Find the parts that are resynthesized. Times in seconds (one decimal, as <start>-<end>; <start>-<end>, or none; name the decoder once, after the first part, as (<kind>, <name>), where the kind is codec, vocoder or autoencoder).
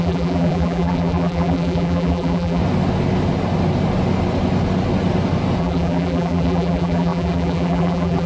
0.0-2.6 (vocoder, BigVGAN v2); 5.6-8.3